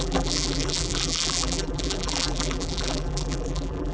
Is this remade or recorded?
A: remade